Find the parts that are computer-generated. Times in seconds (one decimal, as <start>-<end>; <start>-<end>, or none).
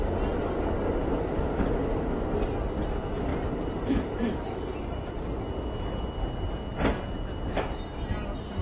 1.0-1.9; 3.3-5.2